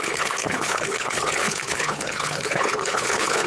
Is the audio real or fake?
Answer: fake